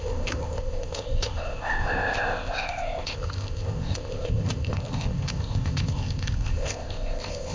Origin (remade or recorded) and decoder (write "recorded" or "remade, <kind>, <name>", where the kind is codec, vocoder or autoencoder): remade, codec, ZipCodec